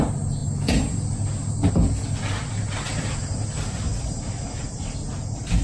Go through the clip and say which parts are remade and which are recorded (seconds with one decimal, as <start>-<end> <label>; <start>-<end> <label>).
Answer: 0.0-5.6 recorded